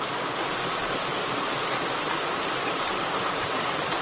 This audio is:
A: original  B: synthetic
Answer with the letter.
A